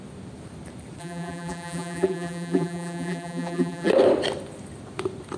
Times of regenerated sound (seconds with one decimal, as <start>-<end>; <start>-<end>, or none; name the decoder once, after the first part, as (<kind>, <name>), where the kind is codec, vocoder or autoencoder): 1.0-3.9 (vocoder, BigVGAN v2)